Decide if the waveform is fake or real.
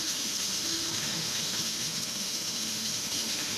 fake